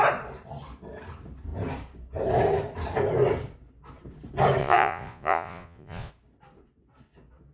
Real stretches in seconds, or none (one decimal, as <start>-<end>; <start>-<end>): 0.0-4.6; 6.1-7.5